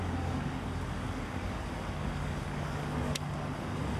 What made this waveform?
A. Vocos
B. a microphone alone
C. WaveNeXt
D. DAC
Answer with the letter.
D